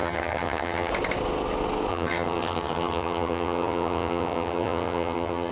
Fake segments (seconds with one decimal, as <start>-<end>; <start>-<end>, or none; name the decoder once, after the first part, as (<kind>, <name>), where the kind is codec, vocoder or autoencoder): 0.0-0.9 (vocoder, HiFi-GAN); 1.9-5.5